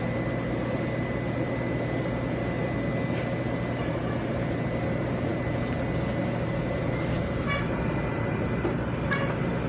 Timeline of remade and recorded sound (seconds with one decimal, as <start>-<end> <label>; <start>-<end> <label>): 0.0-9.7 recorded